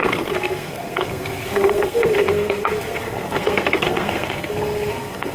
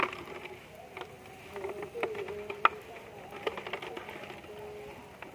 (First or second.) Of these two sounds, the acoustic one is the second